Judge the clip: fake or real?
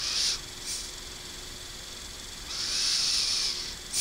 real